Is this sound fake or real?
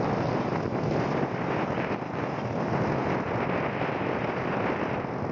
real